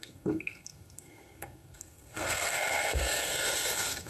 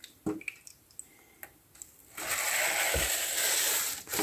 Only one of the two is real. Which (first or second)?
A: second